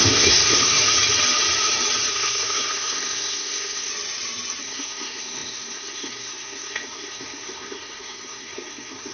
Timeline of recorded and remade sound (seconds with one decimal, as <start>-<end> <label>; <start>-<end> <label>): 0.0-0.8 remade; 0.8-2.1 recorded; 2.1-3.9 remade; 3.9-4.6 recorded; 4.6-9.1 remade